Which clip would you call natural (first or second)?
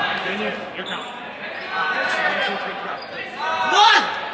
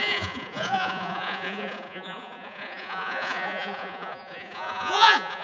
first